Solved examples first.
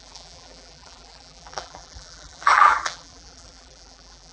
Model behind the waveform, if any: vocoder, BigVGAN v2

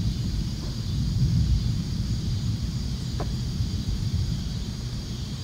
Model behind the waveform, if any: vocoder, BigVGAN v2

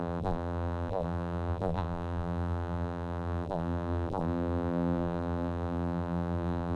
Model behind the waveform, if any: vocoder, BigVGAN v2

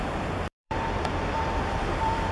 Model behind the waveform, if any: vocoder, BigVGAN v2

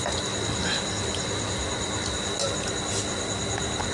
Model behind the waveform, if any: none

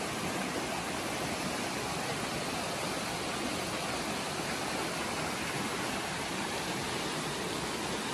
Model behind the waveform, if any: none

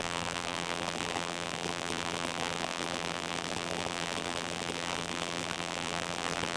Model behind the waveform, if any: vocoder, BigVGAN v2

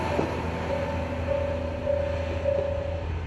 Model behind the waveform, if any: none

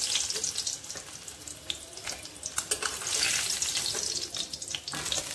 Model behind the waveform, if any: none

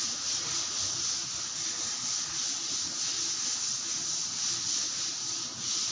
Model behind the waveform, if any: none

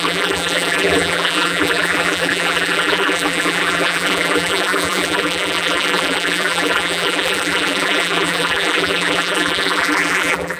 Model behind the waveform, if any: vocoder, BigVGAN v2